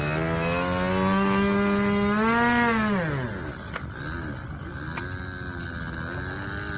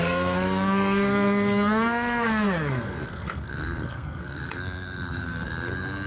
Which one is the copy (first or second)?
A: second